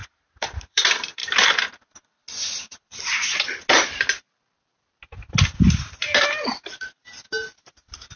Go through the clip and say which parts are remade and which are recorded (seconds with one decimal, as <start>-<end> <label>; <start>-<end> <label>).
0.0-1.2 remade; 1.2-5.8 recorded; 5.8-8.2 remade